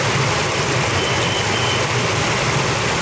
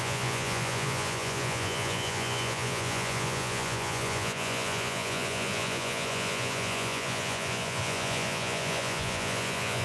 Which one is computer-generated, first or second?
second